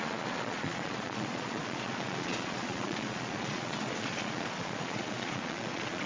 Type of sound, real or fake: fake